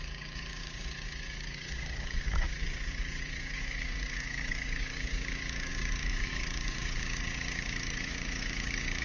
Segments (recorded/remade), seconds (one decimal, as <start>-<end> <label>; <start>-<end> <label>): 0.0-9.0 remade